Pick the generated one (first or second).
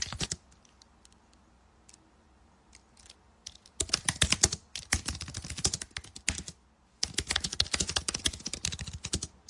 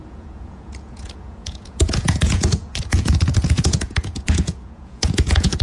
second